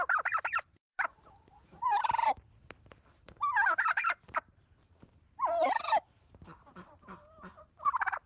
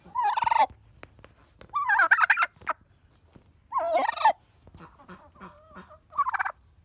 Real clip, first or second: second